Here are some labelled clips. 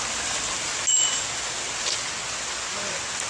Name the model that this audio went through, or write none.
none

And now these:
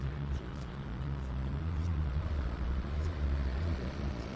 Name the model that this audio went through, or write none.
vocoder, Vocos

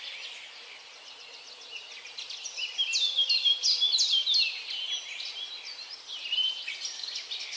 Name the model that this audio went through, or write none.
none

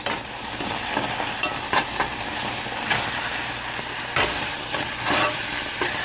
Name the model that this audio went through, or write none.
none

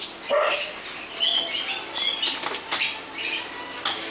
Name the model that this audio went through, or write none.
none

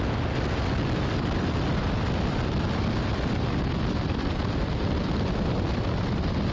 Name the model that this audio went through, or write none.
none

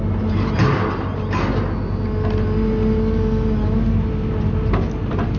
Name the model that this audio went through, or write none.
none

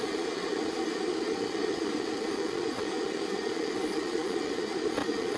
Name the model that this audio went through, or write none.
vocoder, Vocos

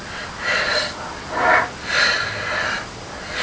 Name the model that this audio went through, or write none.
none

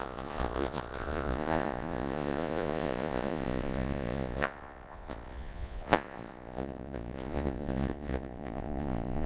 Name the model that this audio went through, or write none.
vocoder, Vocos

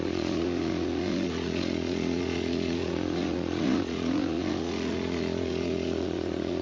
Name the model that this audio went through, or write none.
vocoder, Vocos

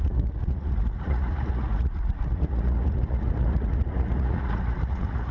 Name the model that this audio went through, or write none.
vocoder, Vocos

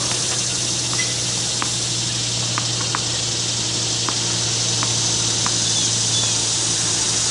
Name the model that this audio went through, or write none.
none